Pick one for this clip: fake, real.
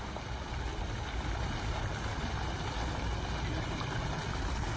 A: real